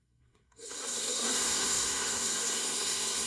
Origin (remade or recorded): remade